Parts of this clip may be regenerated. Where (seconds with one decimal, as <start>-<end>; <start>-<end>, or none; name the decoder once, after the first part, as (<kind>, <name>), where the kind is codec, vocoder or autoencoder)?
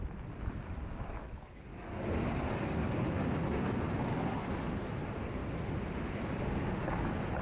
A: none